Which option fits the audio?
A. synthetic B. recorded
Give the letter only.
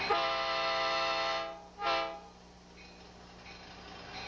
B